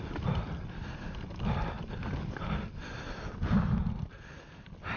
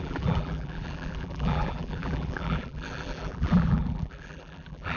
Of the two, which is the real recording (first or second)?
first